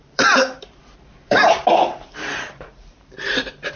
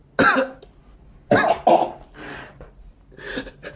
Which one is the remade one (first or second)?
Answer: first